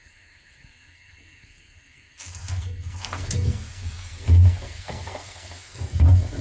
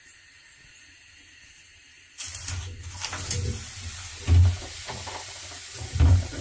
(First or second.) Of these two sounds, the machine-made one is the first